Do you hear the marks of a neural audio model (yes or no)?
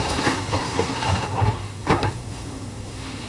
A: yes